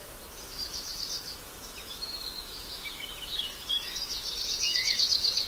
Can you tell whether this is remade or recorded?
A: remade